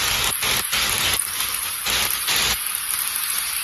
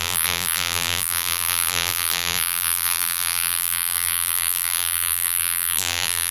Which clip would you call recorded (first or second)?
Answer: first